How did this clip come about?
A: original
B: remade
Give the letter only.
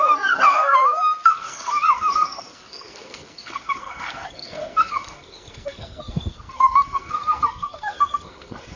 B